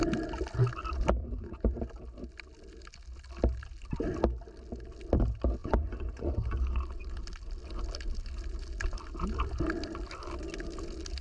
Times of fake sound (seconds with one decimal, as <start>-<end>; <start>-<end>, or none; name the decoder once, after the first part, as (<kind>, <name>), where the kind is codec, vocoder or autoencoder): 1.2-1.8 (vocoder, Vocos); 5.6-6.3